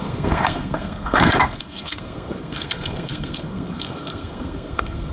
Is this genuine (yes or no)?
no